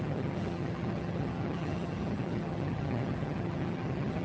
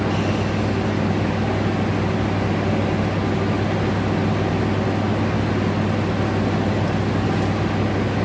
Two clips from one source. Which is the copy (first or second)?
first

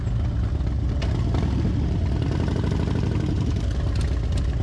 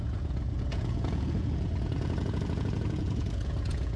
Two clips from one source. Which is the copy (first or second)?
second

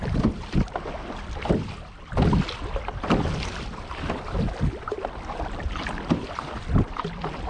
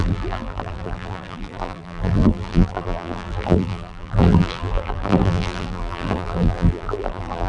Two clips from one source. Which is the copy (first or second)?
second